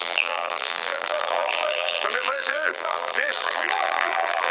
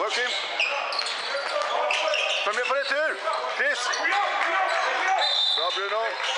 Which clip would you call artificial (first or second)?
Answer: first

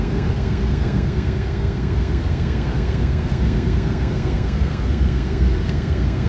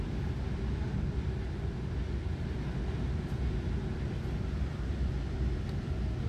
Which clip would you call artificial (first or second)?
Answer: first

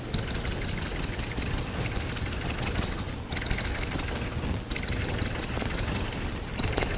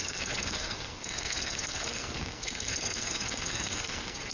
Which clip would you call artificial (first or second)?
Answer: second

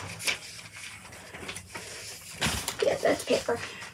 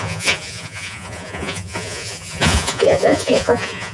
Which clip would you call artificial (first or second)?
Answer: second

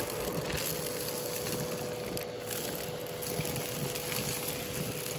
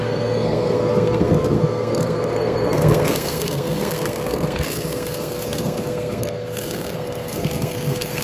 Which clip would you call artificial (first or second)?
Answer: second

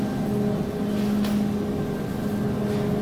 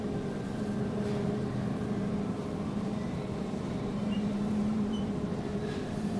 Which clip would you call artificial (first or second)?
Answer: second